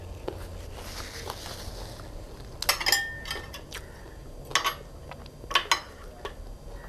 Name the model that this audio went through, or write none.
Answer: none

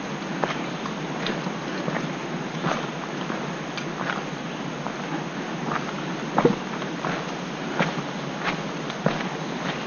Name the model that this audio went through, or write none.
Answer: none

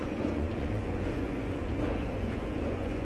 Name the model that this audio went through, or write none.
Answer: vocoder, Vocos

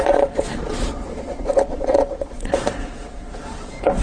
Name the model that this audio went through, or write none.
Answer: vocoder, Vocos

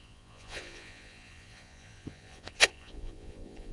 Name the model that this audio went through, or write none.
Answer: vocoder, Vocos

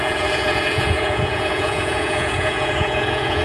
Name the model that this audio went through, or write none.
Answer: vocoder, Vocos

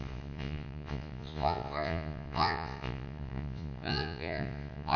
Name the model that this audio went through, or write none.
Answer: vocoder, Vocos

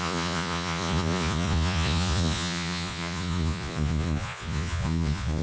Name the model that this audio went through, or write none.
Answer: vocoder, Vocos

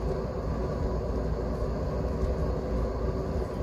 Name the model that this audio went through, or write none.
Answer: none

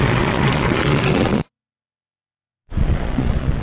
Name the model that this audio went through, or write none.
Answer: vocoder, Vocos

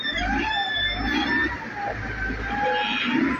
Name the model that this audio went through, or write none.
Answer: none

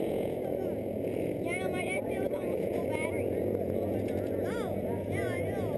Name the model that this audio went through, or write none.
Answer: vocoder, Vocos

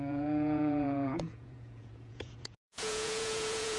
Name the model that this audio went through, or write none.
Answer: vocoder, Vocos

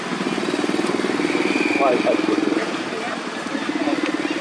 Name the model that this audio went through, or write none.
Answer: none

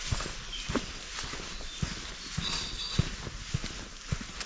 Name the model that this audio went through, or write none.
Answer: none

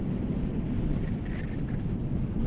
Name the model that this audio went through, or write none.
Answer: none